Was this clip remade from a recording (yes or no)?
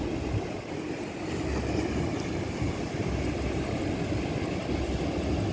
no